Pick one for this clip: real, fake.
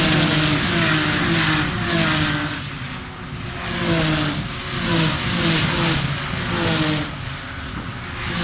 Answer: real